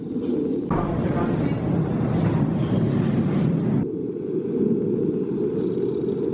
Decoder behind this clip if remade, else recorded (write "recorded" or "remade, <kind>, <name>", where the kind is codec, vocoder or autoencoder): recorded